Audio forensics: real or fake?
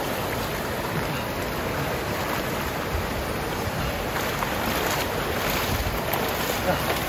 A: real